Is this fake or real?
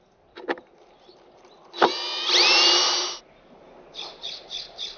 real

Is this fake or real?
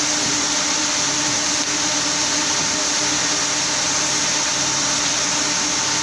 real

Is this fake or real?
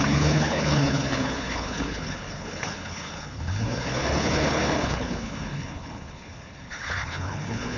fake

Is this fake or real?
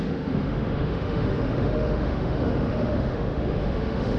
fake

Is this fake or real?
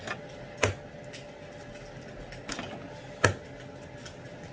real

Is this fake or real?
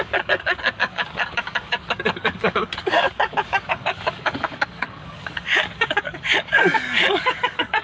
fake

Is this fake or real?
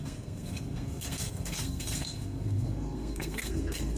fake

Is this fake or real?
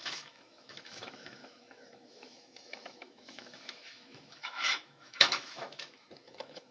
fake